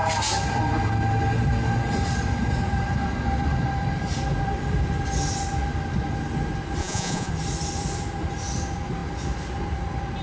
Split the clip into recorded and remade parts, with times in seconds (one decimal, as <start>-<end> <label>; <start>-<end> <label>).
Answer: 0.0-6.8 recorded; 6.8-7.3 remade; 7.3-10.2 recorded